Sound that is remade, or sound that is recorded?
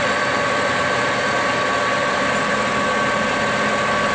recorded